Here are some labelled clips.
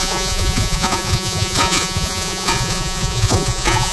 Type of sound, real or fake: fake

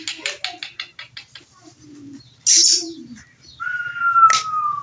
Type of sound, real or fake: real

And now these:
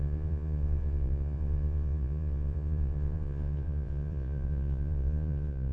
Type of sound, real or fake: fake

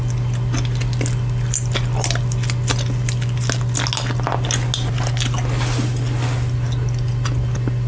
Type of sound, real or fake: real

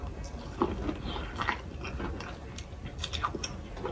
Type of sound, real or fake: real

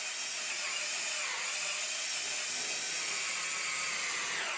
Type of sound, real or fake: real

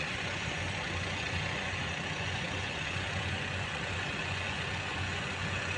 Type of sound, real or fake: fake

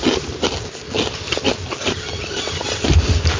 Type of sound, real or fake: real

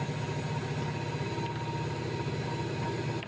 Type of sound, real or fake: real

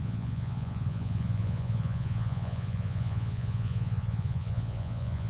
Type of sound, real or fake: fake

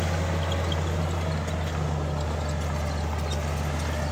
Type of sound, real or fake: real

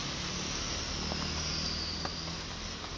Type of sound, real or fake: real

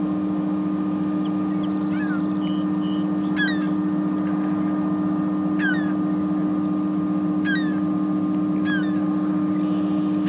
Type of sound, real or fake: real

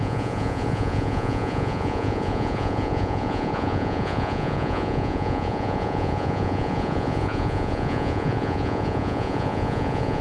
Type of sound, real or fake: fake